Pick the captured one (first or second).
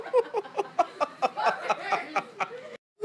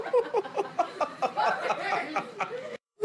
first